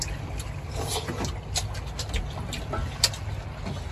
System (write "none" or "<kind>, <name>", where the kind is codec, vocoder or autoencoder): none